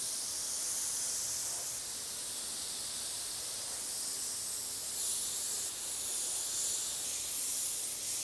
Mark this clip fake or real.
real